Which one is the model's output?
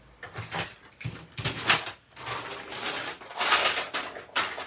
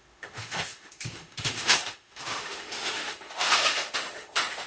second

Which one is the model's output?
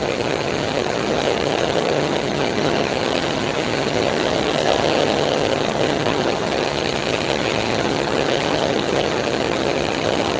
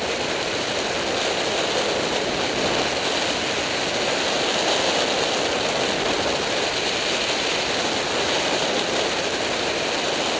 first